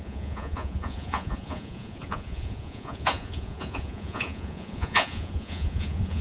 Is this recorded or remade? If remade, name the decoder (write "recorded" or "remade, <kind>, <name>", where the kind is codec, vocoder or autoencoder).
remade, vocoder, Vocos